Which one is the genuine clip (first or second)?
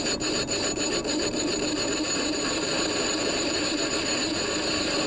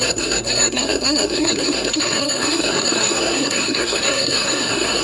first